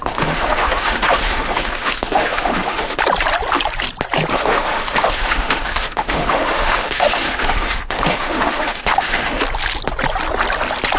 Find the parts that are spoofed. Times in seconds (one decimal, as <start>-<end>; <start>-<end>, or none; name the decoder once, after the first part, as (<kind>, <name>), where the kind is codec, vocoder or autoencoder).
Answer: 0.0-3.0 (autoencoder, DAC-VAE); 4.3-9.4